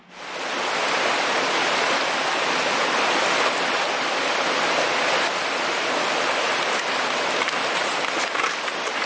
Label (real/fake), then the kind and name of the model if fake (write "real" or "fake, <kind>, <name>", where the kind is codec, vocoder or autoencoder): real